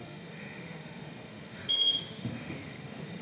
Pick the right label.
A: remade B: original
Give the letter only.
A